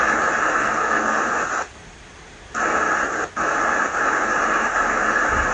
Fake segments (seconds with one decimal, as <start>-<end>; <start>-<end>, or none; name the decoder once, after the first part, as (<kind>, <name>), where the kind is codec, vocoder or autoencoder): 0.6-1.2 (codec, SNAC)